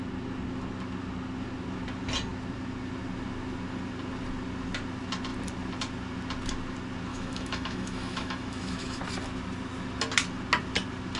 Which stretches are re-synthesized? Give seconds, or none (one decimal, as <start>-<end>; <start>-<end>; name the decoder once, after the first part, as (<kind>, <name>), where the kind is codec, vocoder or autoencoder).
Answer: 7.1-9.0 (autoencoder, DAC-VAE)